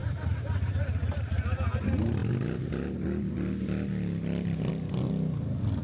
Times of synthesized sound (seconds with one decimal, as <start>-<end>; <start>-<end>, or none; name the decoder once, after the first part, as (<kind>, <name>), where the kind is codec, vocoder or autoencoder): none